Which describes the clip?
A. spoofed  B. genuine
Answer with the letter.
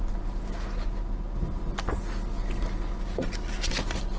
B